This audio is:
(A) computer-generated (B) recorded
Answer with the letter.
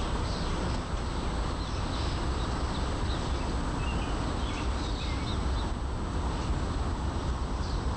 B